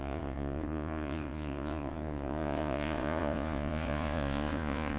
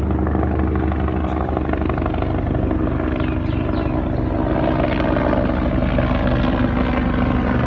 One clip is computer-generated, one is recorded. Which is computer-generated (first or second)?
first